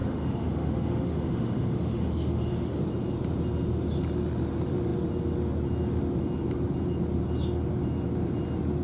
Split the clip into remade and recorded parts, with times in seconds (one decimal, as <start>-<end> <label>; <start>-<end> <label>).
0.0-2.8 remade; 2.8-8.8 recorded